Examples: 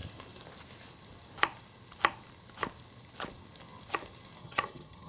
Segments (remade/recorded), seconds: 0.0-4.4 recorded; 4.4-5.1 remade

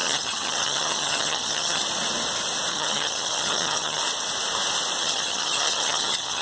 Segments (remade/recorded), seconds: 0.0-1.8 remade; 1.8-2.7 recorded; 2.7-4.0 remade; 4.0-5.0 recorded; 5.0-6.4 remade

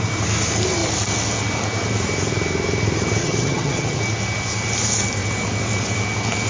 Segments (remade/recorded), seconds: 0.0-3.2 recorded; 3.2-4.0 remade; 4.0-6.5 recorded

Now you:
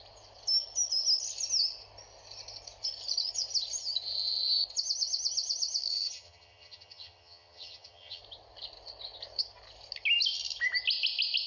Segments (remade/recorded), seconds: 0.0-5.9 recorded; 5.9-8.2 remade; 8.2-11.5 recorded

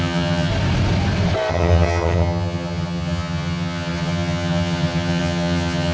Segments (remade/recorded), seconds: 0.0-0.5 remade; 0.5-1.5 recorded; 1.5-5.9 remade

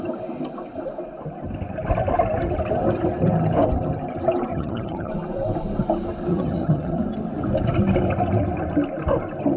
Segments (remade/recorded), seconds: 0.0-4.5 recorded; 4.5-5.1 remade; 5.1-6.3 recorded; 6.3-7.0 remade; 7.0-9.6 recorded